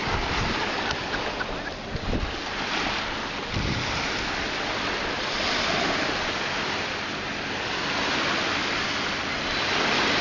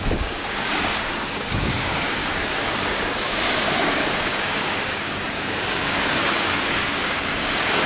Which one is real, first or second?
first